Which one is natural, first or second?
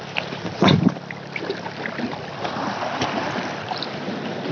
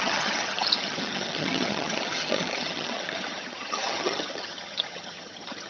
first